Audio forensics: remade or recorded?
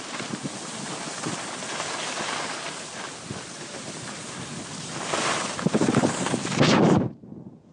recorded